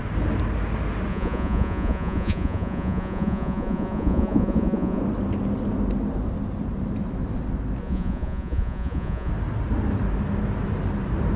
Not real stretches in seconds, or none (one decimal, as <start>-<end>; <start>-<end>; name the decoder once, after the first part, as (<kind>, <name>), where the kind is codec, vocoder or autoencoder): 1.1-5.0 (vocoder, Vocos); 7.8-9.3